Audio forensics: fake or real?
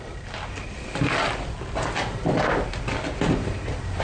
real